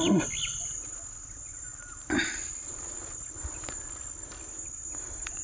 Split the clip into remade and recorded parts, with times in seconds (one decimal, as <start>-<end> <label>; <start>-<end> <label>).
0.0-1.7 recorded; 1.7-3.9 remade; 3.9-5.4 recorded